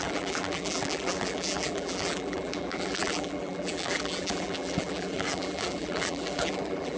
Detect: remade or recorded remade